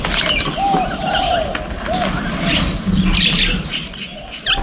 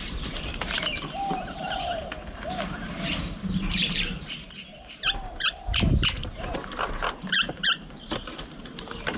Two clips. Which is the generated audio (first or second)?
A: second